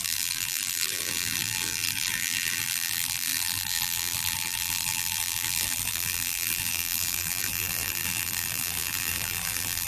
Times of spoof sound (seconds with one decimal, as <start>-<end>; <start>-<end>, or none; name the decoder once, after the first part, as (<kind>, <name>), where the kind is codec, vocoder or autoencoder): 0.0-9.9 (vocoder, BigVGAN v2)